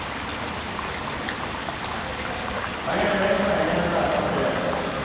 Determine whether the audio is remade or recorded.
recorded